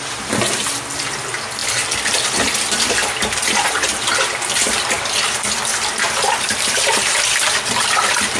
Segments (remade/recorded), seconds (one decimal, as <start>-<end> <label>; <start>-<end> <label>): 0.0-5.7 recorded; 5.7-8.4 remade